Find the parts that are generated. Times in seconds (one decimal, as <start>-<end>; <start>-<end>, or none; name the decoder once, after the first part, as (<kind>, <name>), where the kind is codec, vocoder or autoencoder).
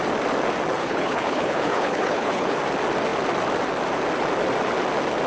0.8-2.6 (codec, HILCodec)